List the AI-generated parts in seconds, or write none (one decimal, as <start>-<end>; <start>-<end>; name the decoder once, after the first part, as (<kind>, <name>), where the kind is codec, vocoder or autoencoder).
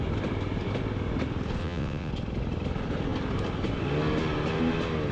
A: 1.6-2.1 (vocoder, WaveNeXt)